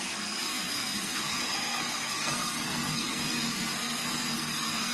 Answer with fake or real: fake